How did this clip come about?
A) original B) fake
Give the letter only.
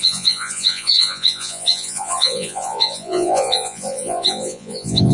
B